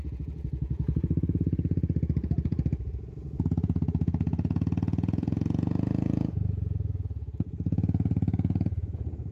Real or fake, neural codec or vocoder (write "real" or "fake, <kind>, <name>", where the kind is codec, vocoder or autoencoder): fake, vocoder, Vocos